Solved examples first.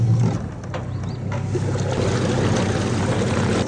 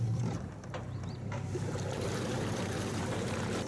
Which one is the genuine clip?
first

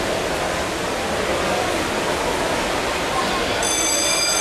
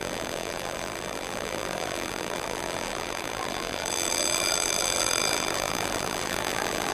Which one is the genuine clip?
first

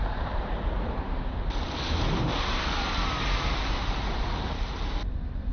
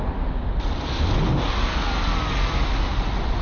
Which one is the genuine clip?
second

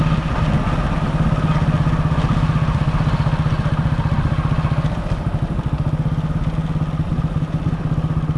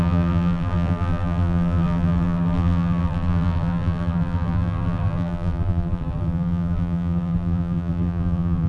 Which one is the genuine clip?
first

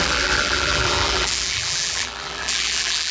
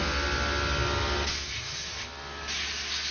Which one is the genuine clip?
second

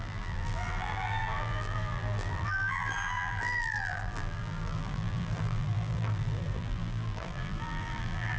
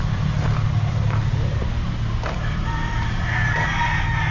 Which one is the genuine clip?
second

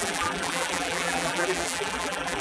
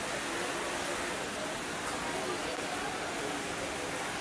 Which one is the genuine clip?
second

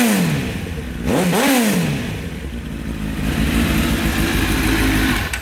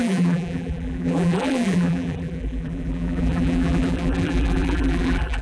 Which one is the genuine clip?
first